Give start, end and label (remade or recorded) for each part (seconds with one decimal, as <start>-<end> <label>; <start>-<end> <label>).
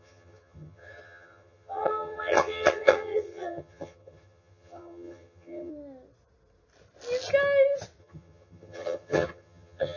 0.0-5.7 remade; 5.7-8.0 recorded; 8.0-10.0 remade